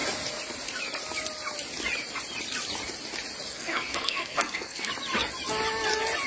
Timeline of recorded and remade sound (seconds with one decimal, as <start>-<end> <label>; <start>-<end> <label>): 0.0-3.5 recorded; 3.5-4.9 remade; 4.9-6.3 recorded